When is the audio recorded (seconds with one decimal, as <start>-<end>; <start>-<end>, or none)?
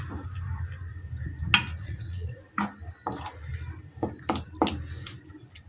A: 0.0-1.7; 2.4-5.7